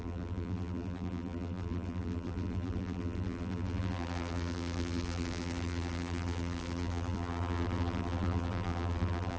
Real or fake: fake